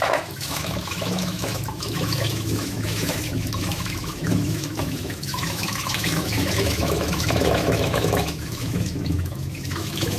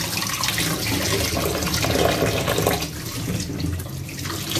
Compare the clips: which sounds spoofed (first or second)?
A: first